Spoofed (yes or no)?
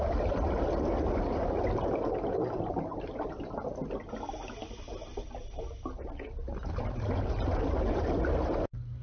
no